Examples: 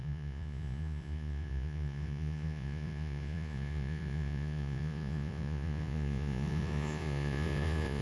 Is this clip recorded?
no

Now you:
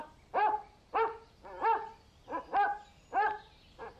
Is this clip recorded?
yes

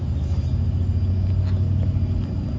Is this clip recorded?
yes